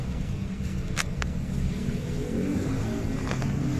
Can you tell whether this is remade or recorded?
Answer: remade